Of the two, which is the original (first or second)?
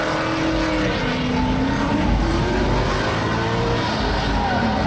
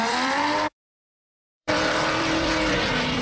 first